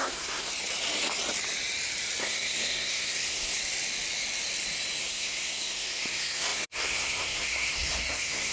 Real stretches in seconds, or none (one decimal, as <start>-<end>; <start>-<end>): 0.5-2.2; 3.6-5.0